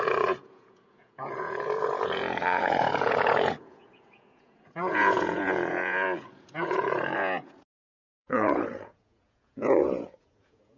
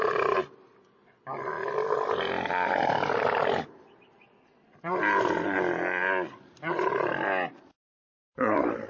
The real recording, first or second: second